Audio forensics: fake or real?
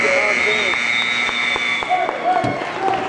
real